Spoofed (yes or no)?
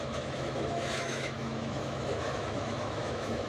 yes